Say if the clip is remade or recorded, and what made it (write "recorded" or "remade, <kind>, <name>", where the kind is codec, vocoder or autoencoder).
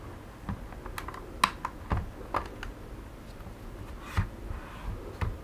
recorded